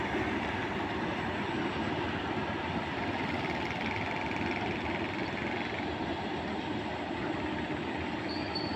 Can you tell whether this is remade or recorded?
recorded